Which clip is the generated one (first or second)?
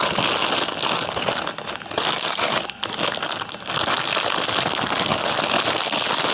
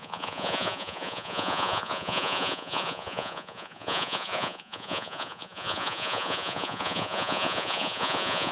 second